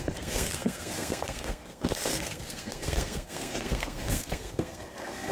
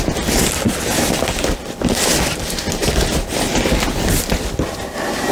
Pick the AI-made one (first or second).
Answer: first